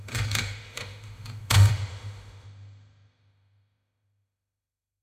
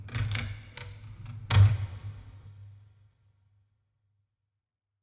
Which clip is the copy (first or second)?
first